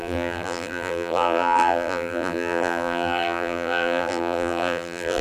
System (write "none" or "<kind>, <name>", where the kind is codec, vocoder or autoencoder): vocoder, BigVGAN v2